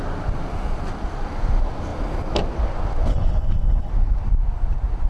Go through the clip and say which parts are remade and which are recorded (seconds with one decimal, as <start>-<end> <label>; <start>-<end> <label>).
0.0-3.1 recorded; 3.1-3.9 remade; 3.9-5.1 recorded